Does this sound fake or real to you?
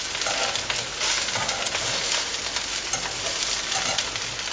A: real